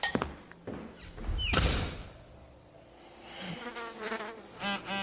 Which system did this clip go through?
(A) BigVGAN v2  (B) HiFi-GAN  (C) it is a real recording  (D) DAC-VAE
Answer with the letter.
C